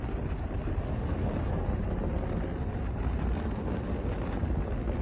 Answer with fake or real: real